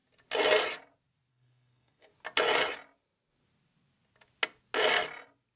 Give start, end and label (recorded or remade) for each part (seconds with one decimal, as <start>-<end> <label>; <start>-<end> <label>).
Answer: 0.0-1.3 recorded; 1.3-2.1 remade; 2.1-5.6 recorded